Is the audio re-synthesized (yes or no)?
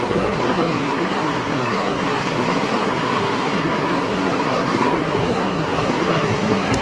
yes